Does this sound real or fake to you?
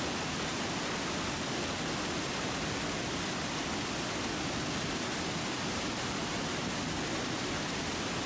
real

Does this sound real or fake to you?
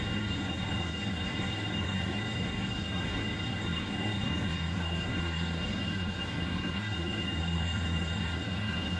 fake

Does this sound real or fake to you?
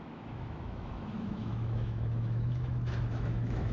fake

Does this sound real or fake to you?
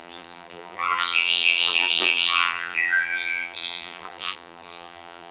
fake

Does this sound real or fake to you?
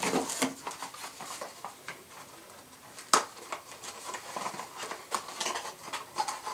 real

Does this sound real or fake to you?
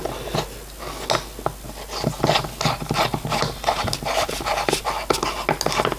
real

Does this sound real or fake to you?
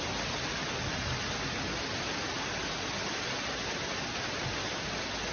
real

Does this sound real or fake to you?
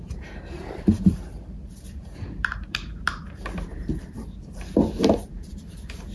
fake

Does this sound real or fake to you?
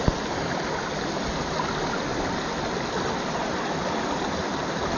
real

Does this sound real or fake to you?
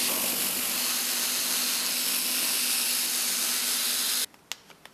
real